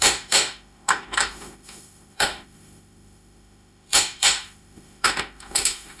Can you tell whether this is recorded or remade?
remade